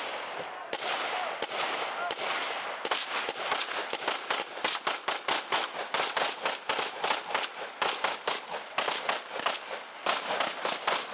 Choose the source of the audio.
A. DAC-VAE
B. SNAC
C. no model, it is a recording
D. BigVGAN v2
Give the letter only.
C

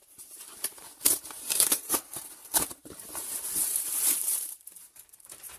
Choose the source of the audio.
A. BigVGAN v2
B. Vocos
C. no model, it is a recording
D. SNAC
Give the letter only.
A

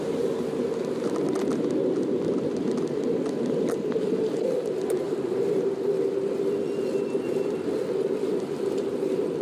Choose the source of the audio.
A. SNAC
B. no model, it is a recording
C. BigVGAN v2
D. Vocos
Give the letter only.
B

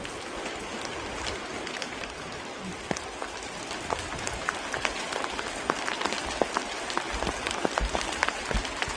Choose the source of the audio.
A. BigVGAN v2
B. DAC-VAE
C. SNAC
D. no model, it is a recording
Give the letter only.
D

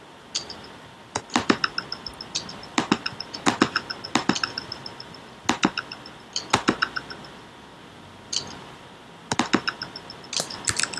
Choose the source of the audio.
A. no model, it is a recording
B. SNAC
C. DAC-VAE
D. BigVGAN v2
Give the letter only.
A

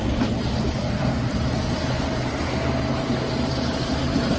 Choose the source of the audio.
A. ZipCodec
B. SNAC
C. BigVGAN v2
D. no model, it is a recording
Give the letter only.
C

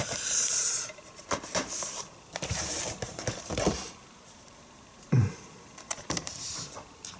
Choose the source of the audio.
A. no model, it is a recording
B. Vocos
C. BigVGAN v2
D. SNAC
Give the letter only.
C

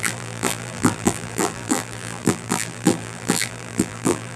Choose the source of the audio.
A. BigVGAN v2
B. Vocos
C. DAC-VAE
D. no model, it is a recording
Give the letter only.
A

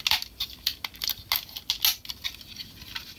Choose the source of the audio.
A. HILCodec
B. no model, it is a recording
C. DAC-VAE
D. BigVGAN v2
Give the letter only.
B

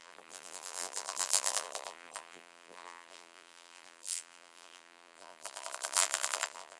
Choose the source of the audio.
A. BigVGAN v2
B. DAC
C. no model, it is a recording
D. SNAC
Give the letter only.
A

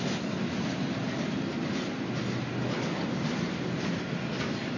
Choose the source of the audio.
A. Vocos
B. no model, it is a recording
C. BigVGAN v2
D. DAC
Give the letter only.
B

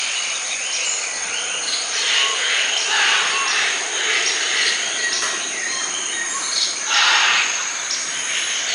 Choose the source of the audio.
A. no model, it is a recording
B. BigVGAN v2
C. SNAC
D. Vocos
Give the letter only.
B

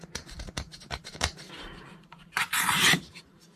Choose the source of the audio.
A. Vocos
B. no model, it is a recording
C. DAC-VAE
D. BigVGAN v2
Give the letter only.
D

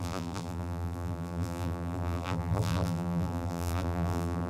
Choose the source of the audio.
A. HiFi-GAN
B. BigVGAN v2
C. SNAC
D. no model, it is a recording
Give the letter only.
B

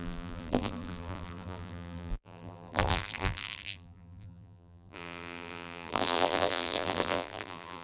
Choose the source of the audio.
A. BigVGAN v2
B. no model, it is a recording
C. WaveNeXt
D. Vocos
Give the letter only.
A